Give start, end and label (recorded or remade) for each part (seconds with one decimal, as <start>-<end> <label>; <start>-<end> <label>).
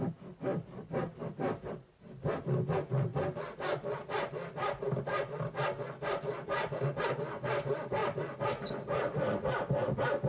0.0-10.3 recorded